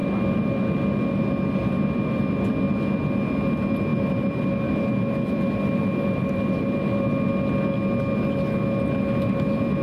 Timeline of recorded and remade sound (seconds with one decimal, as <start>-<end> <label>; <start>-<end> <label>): 0.0-1.2 remade; 1.2-1.6 recorded; 1.6-2.5 remade; 2.5-3.9 recorded; 3.9-7.0 remade; 7.0-9.8 recorded